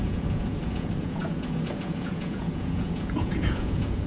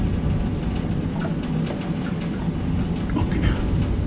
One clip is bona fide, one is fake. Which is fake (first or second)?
first